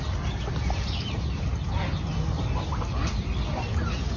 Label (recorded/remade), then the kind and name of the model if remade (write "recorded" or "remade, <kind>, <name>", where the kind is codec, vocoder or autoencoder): recorded